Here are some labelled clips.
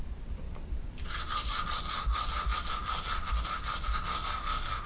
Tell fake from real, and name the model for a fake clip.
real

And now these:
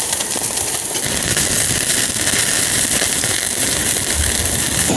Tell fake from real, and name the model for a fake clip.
fake, vocoder, BigVGAN v2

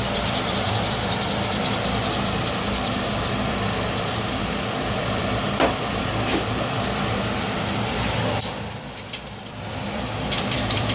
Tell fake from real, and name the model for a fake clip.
fake, vocoder, BigVGAN v2